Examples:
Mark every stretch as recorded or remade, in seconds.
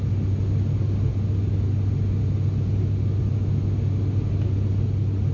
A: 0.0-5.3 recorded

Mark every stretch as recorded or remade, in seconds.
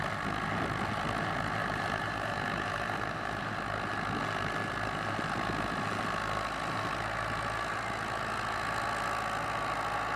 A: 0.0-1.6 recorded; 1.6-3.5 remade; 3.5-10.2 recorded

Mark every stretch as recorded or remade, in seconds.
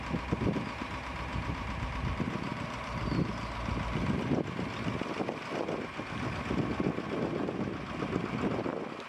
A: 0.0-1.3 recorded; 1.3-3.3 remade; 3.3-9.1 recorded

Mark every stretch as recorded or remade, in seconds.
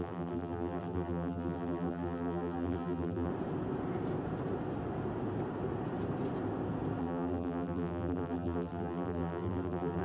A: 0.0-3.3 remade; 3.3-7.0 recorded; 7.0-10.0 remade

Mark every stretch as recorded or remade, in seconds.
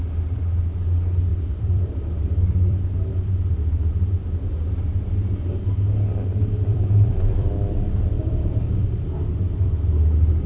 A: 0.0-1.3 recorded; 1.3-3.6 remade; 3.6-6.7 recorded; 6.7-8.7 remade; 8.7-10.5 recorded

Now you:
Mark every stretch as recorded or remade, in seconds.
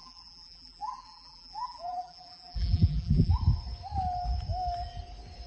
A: 0.0-3.3 remade; 3.3-5.5 recorded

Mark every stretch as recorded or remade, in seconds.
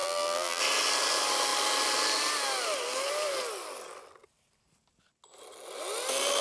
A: 0.0-0.6 remade; 0.6-6.4 recorded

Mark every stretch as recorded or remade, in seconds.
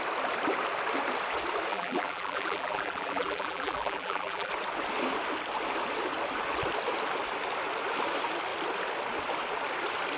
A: 0.0-1.7 recorded; 1.7-4.5 remade; 4.5-10.2 recorded